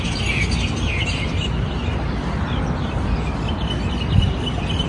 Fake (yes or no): no